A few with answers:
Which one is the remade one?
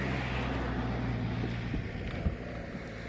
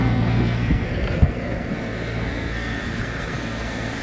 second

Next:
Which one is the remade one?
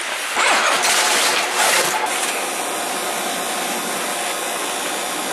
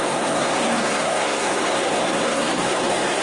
second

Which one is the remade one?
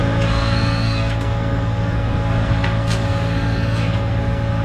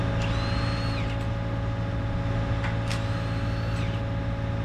first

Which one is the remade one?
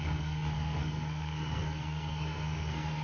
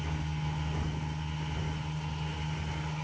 first